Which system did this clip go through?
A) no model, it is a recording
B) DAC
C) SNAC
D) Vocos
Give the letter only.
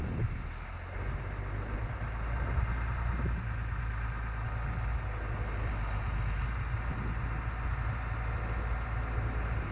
A